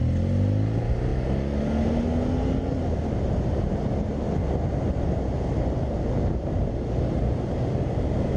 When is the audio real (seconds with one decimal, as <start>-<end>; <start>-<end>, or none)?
0.0-8.4